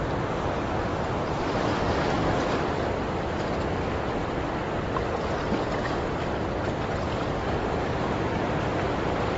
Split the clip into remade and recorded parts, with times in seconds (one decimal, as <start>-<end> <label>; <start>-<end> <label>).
0.0-9.4 recorded